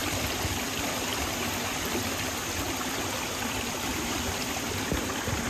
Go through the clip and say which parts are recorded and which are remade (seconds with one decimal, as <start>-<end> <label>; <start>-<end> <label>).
0.0-0.6 recorded; 0.6-1.1 remade; 1.1-3.0 recorded; 3.0-5.5 remade